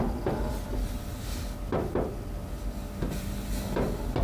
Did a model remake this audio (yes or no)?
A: no